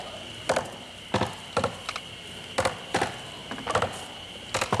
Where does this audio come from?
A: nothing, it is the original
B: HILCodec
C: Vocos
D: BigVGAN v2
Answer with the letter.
D